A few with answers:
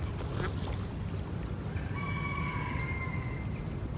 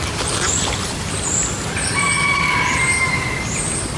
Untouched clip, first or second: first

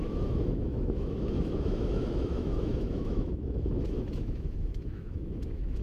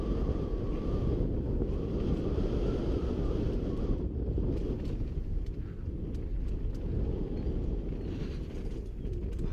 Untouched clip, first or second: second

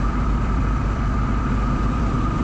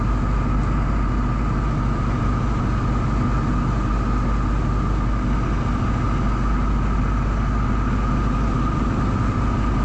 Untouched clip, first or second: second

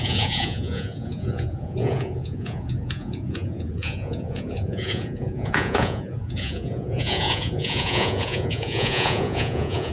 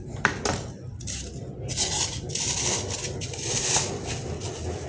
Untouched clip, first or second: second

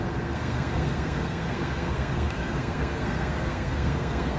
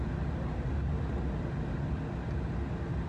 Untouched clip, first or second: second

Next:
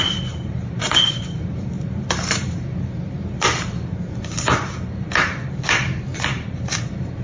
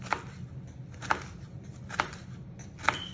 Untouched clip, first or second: second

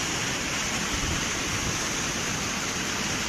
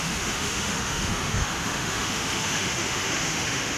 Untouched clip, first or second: first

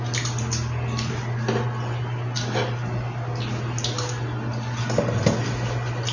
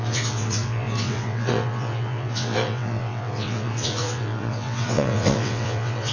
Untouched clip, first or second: first